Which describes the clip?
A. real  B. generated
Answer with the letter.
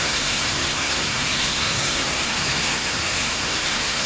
B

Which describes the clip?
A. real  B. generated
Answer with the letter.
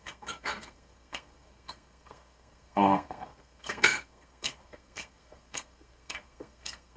B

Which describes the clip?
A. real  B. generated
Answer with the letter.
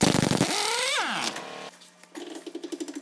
A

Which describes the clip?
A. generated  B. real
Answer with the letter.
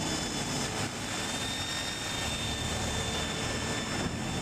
B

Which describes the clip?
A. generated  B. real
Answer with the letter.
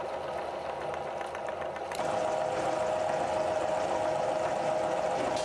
B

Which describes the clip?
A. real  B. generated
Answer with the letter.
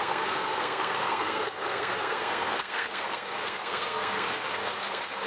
B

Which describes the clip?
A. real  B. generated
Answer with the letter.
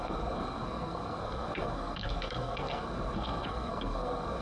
B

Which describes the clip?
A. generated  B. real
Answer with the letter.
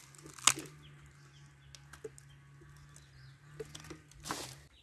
B